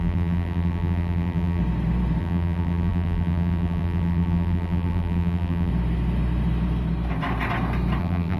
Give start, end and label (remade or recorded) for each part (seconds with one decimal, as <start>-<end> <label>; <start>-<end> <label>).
0.0-1.6 remade; 1.6-2.2 recorded; 2.2-5.7 remade; 5.7-8.0 recorded; 8.0-8.4 remade